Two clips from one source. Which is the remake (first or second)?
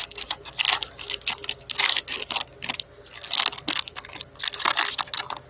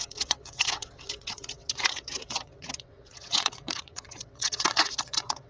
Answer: second